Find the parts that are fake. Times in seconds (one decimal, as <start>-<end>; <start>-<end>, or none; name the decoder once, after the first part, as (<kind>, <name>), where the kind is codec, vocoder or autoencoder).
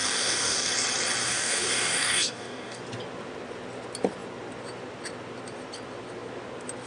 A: 0.0-0.7 (codec, DAC); 1.2-2.8